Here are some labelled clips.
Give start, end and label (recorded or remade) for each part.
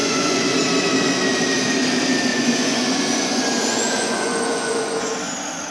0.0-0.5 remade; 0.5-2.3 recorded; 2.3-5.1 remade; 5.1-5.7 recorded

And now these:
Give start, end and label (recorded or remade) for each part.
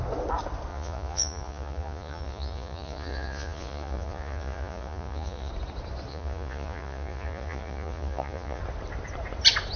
0.0-0.7 recorded; 0.7-5.5 remade; 5.5-6.1 recorded; 6.1-8.6 remade; 8.6-9.8 recorded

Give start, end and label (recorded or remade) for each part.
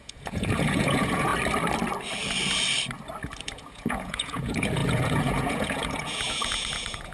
0.0-1.3 remade; 1.3-3.4 recorded; 3.4-7.1 remade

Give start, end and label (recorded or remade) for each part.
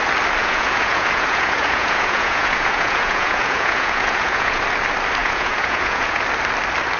0.0-0.4 recorded; 0.4-4.6 remade; 4.6-5.2 recorded; 5.2-6.2 remade; 6.2-7.0 recorded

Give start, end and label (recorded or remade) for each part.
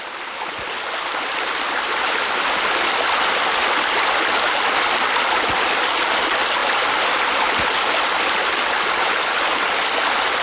0.0-10.4 recorded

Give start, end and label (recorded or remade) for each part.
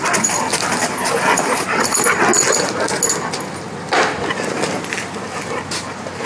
0.0-6.2 recorded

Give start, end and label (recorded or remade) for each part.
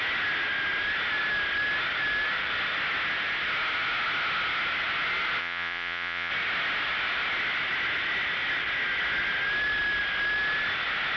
0.0-5.4 recorded; 5.4-6.3 remade; 6.3-11.2 recorded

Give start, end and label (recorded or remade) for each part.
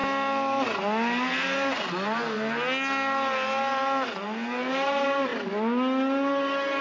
0.0-6.8 recorded